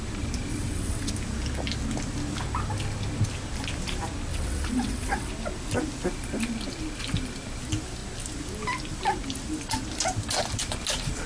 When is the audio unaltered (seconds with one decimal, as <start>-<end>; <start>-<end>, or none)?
0.0-0.5; 1.1-4.3; 5.3-11.3